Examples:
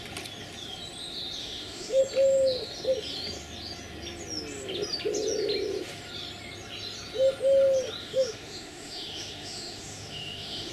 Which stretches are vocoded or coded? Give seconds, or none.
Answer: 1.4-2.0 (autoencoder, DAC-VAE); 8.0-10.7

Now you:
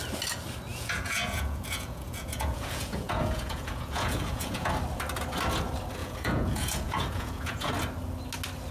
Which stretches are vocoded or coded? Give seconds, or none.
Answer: 0.7-4.7 (vocoder, Vocos); 6.0-7.7

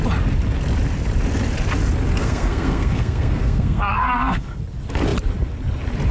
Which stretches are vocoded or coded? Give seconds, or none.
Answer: 2.2-4.6 (codec, SNAC)

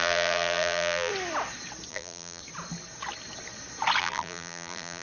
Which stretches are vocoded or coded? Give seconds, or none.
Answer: 0.0-1.1 (vocoder, BigVGAN v2); 1.9-2.4; 4.0-5.0